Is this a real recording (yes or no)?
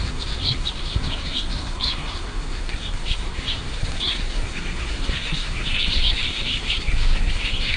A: no